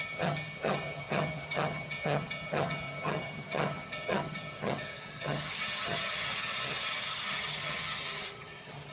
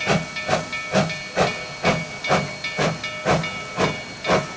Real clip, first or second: second